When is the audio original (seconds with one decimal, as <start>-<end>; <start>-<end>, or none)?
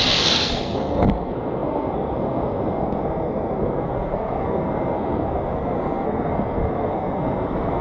none